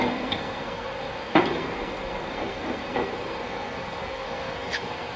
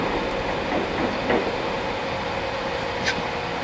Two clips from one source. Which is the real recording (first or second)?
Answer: second